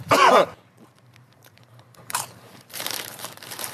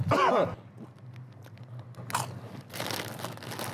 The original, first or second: second